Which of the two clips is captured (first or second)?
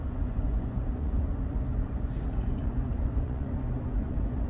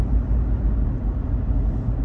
second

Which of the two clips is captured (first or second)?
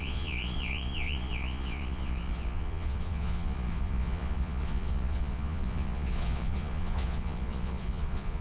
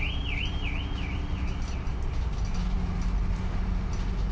second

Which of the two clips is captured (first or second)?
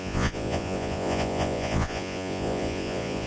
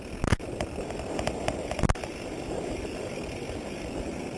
second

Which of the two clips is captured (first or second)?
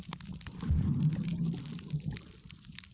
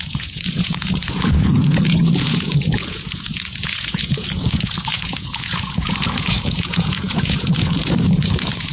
first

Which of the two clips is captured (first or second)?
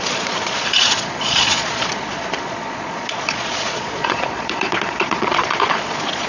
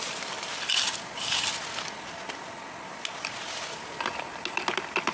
second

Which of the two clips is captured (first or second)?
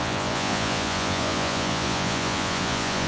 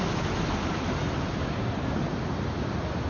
second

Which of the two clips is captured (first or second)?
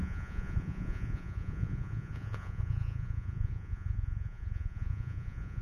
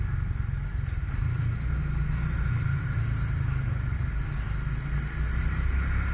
second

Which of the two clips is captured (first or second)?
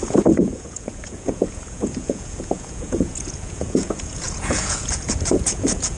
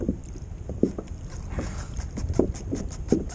second